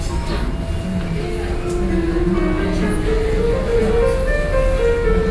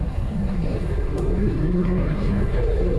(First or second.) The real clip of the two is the first